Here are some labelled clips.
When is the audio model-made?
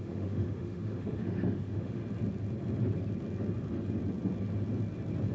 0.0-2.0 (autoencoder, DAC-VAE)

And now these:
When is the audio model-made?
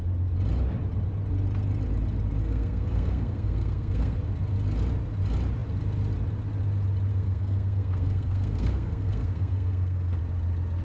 2.4-4.2 (codec, SNAC); 7.1-10.2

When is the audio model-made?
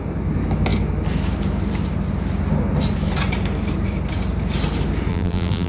5.1-5.7 (vocoder, BigVGAN v2)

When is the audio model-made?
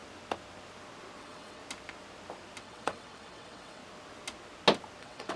1.2-1.6 (vocoder, WaveNeXt); 2.6-3.8; 5.0-5.4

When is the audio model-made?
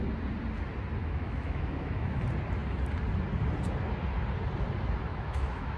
1.0-2.2 (autoencoder, DAC-VAE); 5.1-5.8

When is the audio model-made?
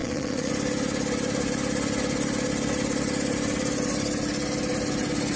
0.0-0.5 (vocoder, Vocos)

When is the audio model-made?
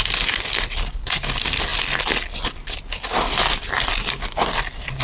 none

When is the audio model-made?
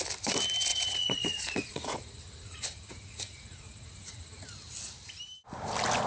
0.7-4.4 (vocoder, Vocos)